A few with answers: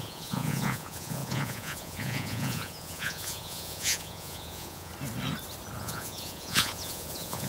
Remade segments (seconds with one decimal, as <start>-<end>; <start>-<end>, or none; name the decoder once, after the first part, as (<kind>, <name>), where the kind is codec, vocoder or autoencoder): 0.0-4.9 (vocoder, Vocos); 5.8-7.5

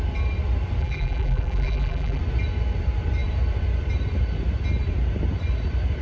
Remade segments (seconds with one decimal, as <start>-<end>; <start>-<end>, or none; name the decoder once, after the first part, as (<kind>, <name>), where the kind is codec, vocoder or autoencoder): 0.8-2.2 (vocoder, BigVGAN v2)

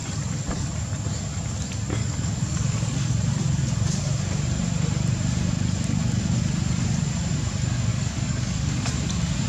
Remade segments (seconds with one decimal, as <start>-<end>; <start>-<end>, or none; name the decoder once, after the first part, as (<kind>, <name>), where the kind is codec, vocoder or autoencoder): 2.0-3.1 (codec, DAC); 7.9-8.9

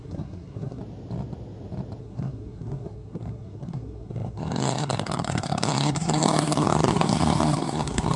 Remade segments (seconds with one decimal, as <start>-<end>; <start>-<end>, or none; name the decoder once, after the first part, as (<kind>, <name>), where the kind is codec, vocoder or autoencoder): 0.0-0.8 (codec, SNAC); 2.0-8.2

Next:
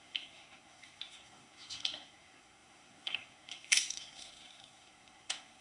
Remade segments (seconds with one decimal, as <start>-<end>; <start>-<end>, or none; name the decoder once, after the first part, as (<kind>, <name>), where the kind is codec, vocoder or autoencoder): 0.0-5.6 (codec, SNAC)

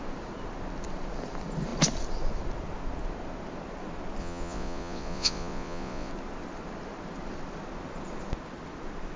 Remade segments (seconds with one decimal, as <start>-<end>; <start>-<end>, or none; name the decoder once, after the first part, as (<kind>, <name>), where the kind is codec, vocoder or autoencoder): 4.2-6.1 (vocoder, Vocos)

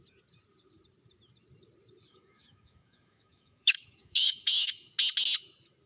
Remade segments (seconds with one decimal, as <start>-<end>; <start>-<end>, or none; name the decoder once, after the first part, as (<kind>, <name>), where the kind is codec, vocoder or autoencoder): 2.1-4.9 (autoencoder, DAC-VAE)

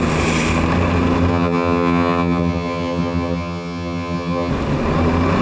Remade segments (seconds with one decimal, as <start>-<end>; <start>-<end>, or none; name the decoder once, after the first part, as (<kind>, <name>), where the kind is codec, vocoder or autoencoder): 1.3-4.5 (vocoder, HiFi-GAN)